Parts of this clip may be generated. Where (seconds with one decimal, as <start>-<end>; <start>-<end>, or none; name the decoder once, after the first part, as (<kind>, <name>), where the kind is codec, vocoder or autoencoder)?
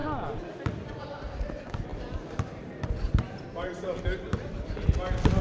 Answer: 1.9-4.8 (vocoder, BigVGAN v2)